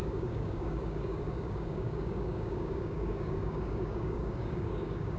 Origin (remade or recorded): remade